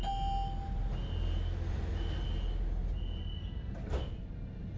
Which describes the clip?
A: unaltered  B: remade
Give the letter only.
A